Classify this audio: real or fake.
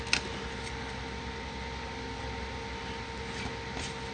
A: real